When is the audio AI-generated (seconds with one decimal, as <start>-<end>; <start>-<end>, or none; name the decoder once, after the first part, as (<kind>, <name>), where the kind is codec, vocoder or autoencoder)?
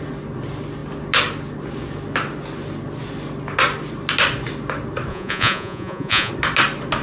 5.1-6.3 (vocoder, Vocos)